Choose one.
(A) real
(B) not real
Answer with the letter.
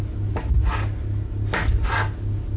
A